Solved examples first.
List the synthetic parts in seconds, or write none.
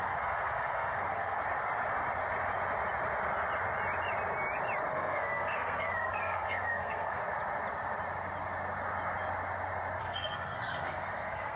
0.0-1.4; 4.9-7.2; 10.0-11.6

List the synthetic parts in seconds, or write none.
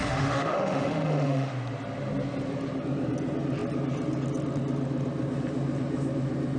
0.0-1.5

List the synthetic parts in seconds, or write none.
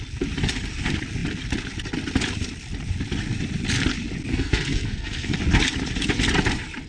4.3-5.4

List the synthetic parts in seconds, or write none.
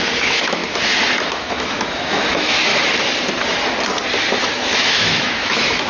0.0-0.6; 1.2-2.7; 4.4-5.9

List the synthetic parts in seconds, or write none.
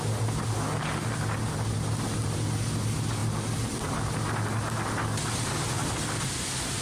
none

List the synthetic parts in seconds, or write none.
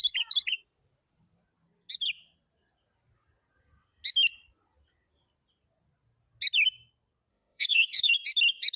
7.3-8.1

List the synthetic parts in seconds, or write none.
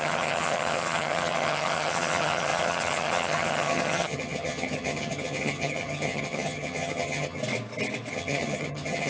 0.0-7.4; 8.1-9.1